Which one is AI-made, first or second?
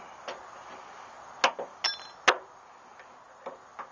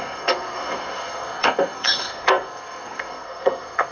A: second